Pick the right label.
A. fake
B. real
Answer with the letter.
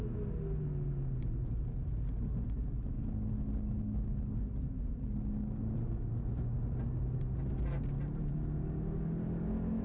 B